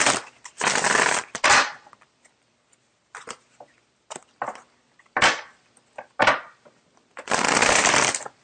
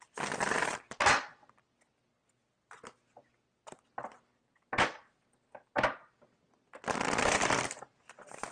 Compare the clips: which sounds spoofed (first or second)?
first